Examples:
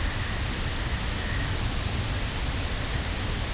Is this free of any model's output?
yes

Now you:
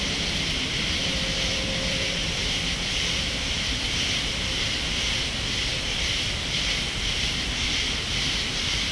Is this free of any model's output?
no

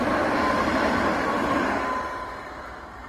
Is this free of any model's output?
yes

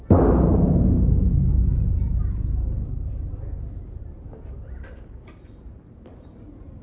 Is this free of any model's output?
no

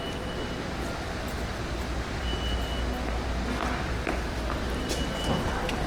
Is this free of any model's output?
no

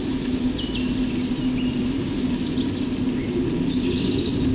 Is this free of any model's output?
yes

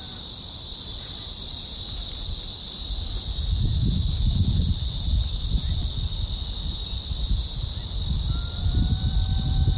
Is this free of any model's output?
no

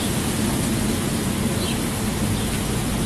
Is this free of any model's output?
yes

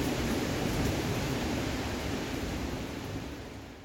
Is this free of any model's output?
no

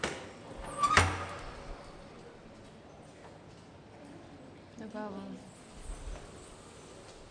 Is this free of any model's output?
yes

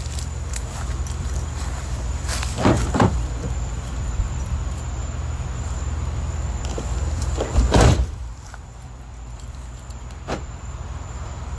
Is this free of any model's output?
no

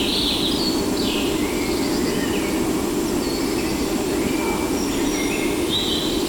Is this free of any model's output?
yes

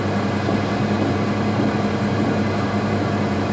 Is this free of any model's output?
no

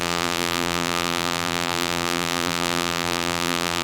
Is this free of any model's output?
no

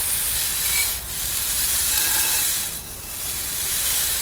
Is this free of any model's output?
no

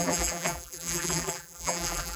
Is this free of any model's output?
no